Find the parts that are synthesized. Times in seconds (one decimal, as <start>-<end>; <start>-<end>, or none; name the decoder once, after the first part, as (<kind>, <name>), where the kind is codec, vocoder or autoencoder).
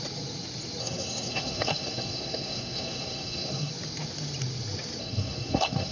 0.8-3.7 (codec, SNAC); 5.0-5.9